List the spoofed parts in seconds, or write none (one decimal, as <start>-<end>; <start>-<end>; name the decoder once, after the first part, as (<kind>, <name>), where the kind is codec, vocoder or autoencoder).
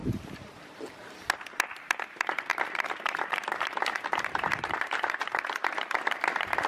0.0-0.5 (vocoder, BigVGAN v2); 2.5-5.4